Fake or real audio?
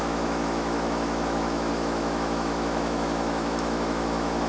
fake